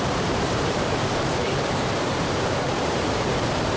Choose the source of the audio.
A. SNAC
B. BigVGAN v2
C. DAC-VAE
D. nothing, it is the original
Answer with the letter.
B